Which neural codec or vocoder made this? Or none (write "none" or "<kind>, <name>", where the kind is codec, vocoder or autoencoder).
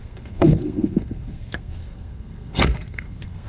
codec, SNAC